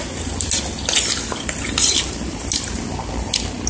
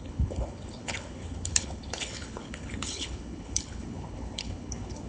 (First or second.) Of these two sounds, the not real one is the second